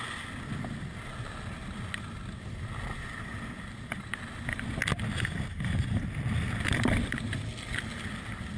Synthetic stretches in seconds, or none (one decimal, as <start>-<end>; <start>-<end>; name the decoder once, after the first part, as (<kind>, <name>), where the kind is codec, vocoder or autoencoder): none